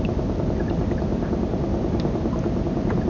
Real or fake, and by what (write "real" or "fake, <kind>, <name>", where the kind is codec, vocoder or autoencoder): real